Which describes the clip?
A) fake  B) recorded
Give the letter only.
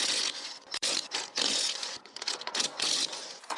A